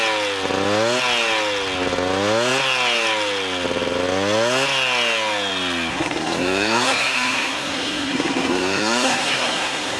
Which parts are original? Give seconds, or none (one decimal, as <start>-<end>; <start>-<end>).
0.0-5.9